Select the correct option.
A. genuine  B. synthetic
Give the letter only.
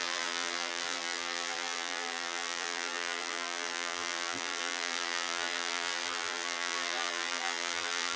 B